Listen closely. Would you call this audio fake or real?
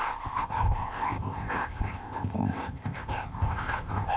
fake